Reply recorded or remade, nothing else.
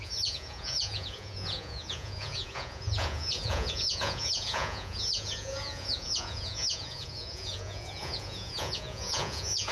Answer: remade